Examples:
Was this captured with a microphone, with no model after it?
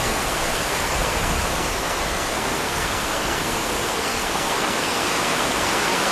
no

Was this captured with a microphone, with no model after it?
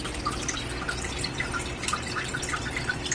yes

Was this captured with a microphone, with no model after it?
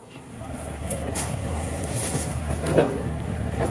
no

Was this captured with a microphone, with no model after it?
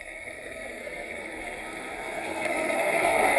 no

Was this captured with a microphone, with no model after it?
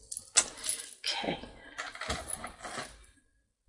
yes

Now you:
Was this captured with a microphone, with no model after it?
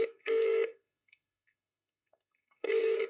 no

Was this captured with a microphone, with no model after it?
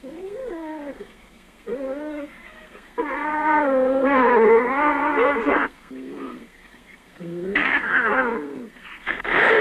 no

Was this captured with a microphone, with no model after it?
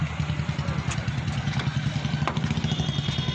yes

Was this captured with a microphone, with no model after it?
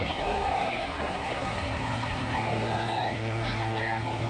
no